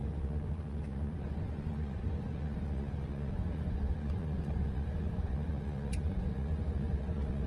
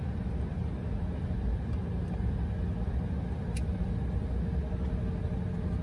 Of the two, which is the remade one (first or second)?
first